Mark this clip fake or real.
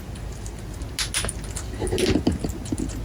real